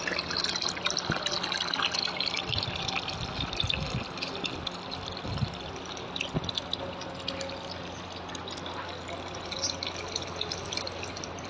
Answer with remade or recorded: recorded